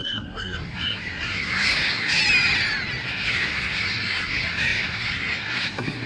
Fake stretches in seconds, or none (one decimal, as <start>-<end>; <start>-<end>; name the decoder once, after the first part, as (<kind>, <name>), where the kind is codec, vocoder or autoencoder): 0.0-2.2 (codec, SNAC); 3.0-6.1